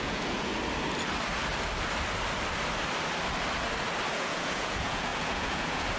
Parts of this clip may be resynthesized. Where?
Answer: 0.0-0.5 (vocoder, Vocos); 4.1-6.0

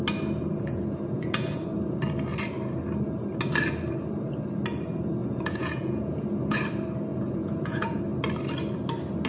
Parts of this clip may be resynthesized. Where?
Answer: 0.5-1.6 (vocoder, Vocos); 5.2-6.6; 7.1-8.0

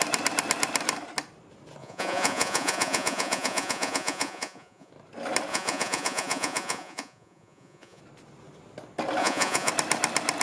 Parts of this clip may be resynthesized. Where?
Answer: 1.8-4.9 (vocoder, Vocos); 5.5-8.0; 9.2-9.7

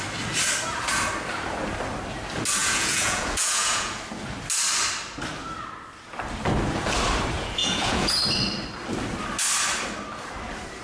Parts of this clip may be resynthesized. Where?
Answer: 2.6-4.0 (vocoder, Vocos); 7.6-8.2

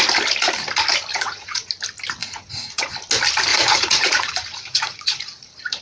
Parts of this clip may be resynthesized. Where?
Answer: 1.1-1.7 (vocoder, Vocos); 2.2-2.9; 3.5-5.8

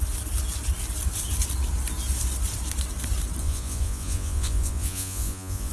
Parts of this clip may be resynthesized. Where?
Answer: 3.4-5.7 (vocoder, Vocos)

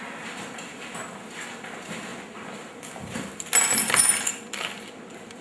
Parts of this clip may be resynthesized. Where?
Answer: none